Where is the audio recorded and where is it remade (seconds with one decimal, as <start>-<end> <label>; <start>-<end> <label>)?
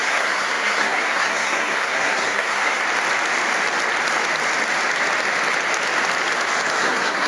0.0-2.8 remade; 2.8-6.8 recorded; 6.8-7.3 remade